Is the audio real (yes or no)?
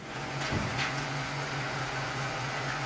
no